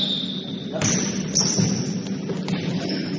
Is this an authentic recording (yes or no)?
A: yes